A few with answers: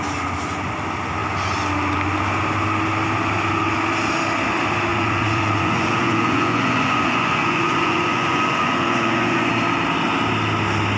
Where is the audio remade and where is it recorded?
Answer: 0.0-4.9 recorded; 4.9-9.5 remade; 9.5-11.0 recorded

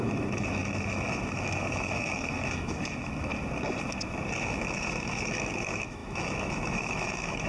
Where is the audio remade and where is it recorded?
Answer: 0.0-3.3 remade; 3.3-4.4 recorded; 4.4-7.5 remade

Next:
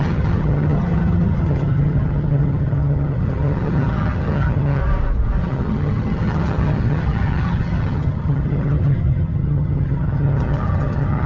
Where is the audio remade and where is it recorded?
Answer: 0.0-4.8 remade; 4.8-5.4 recorded; 5.4-11.3 remade

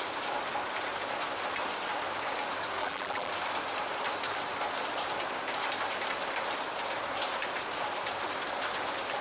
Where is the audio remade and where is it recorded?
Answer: 0.0-2.8 recorded; 2.8-3.3 remade; 3.3-9.2 recorded

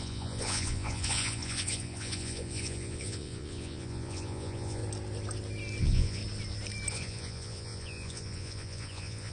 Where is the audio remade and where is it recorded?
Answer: 0.0-4.8 remade; 4.8-5.8 recorded; 5.8-6.2 remade; 6.2-6.9 recorded; 6.9-9.3 remade